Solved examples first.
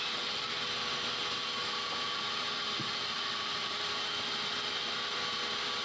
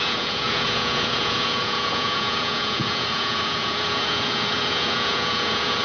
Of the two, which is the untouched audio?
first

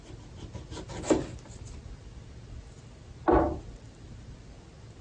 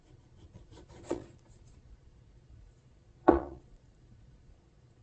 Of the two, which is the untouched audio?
first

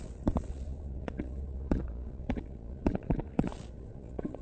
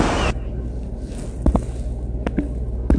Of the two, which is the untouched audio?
second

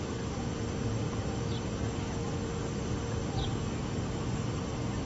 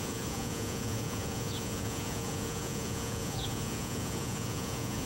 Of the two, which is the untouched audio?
first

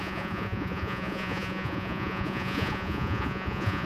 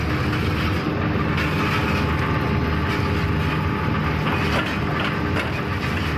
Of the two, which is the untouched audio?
second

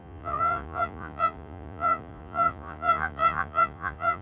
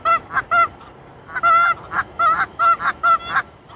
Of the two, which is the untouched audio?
second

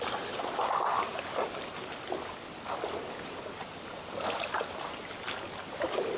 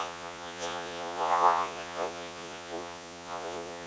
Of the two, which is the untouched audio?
first